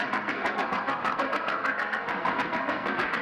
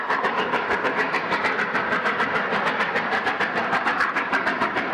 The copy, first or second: first